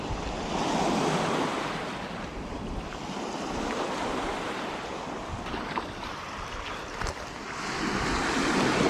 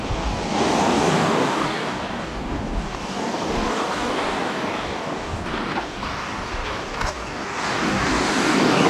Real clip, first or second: first